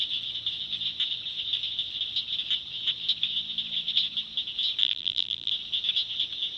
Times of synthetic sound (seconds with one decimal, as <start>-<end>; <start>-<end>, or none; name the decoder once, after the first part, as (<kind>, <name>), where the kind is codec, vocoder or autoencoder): 4.8-5.5 (vocoder, BigVGAN v2)